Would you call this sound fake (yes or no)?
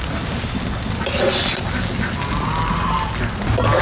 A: no